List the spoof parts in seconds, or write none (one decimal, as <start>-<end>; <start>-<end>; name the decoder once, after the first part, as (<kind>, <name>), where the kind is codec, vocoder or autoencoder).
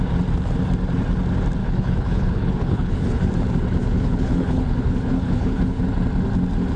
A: 1.6-3.3 (codec, HILCodec); 3.8-5.8